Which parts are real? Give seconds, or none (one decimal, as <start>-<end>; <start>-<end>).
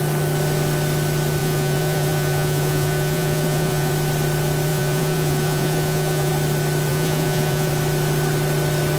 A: 0.0-1.4; 3.9-4.7; 6.3-6.9; 7.7-9.0